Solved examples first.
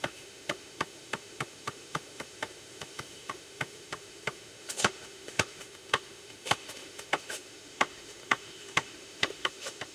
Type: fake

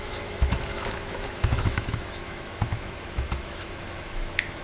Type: fake